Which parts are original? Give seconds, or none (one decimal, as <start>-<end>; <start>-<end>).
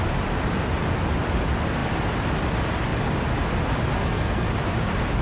0.0-4.0; 4.5-5.2